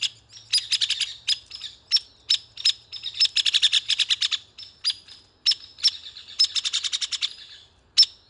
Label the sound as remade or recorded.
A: recorded